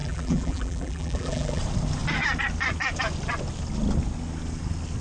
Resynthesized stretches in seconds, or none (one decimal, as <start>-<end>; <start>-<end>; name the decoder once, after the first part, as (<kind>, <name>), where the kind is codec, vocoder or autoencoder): 0.0-1.6 (vocoder, BigVGAN v2)